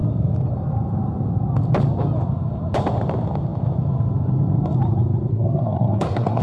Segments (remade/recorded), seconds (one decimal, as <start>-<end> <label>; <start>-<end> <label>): 0.0-5.3 recorded; 5.3-6.4 remade